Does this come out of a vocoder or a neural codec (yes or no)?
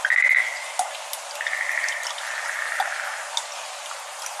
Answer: no